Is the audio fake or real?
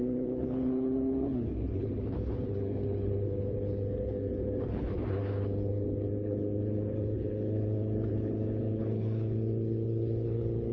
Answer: fake